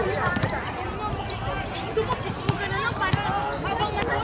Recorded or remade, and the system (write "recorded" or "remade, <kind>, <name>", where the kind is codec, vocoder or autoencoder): recorded